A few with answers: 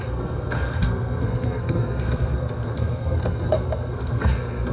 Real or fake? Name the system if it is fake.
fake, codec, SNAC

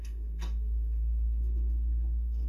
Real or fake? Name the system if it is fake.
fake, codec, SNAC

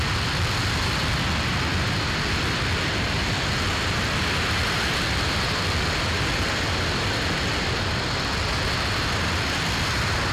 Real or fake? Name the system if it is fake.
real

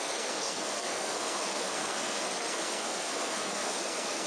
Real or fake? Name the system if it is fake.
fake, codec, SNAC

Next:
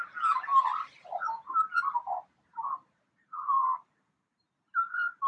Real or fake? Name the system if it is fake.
real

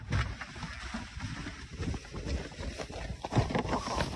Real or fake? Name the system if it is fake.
real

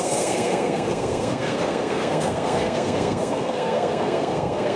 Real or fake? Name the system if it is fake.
fake, codec, SNAC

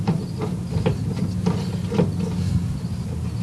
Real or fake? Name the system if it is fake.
real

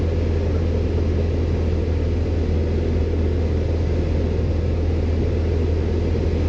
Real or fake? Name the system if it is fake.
real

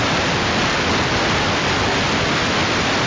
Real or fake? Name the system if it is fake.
real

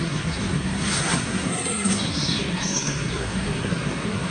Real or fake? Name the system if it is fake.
fake, codec, SNAC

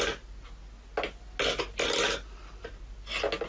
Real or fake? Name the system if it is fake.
real